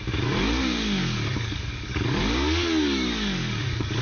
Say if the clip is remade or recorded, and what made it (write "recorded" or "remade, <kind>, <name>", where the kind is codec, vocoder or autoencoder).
remade, codec, DAC